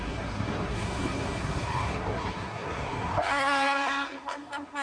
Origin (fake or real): fake